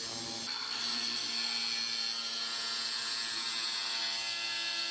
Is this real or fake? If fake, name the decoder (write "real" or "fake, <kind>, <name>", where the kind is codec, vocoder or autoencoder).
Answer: real